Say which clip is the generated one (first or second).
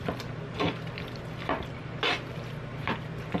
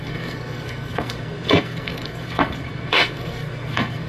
second